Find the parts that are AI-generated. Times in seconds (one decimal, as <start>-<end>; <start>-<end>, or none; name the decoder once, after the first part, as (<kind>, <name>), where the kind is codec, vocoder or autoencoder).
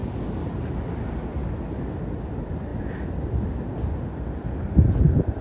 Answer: none